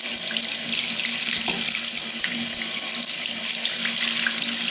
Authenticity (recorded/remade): recorded